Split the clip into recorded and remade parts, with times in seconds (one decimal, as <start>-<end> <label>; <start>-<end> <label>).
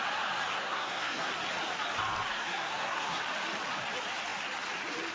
0.0-0.5 recorded; 0.5-1.3 remade; 1.3-2.3 recorded; 2.3-3.2 remade; 3.2-5.1 recorded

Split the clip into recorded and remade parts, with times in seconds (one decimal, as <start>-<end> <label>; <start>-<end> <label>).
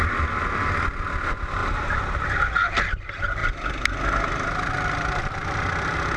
0.0-6.2 recorded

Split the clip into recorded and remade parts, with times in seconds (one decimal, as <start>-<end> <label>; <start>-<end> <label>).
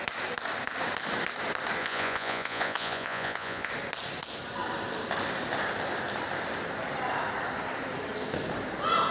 0.0-1.8 recorded; 1.8-3.7 remade; 3.7-9.1 recorded